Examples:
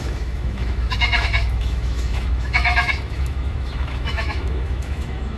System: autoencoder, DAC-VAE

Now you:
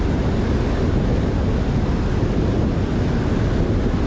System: none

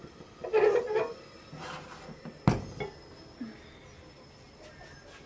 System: none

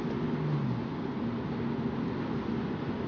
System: none